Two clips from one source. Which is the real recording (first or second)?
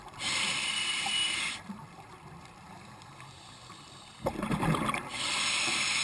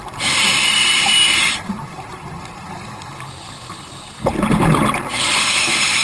second